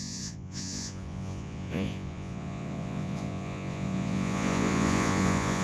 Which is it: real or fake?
fake